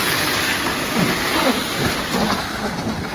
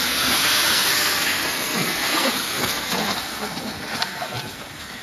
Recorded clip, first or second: first